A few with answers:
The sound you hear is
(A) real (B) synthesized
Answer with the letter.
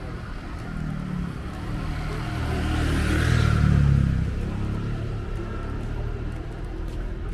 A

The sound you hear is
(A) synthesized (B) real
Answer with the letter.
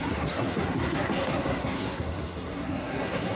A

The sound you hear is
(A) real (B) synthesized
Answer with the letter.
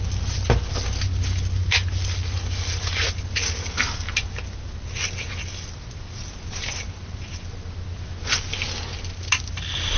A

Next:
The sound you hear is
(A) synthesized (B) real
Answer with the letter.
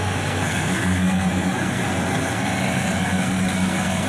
A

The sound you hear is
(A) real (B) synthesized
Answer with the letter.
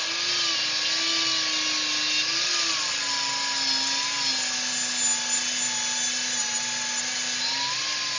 A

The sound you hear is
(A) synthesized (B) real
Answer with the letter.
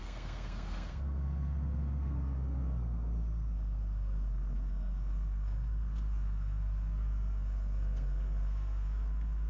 A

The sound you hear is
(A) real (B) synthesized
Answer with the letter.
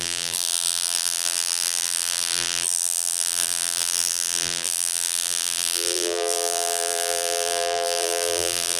B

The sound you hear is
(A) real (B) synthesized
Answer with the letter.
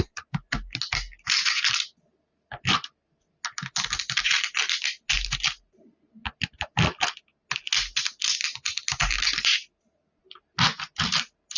A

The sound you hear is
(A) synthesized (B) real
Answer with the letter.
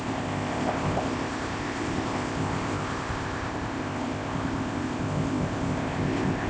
A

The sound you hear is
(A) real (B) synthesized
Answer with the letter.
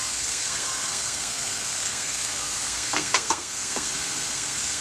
B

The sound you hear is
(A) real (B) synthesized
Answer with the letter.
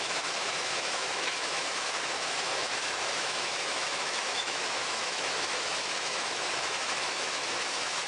B